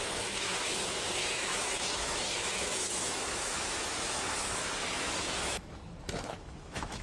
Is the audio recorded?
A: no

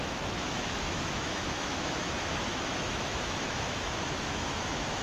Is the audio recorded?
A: no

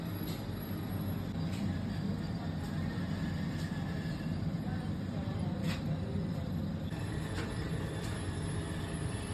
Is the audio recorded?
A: yes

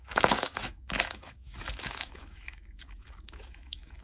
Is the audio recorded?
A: no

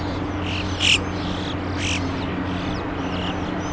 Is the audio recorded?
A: yes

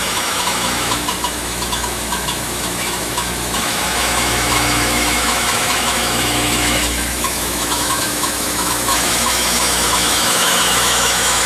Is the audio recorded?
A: no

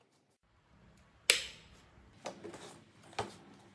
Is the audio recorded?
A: yes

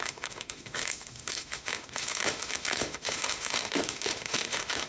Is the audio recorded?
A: no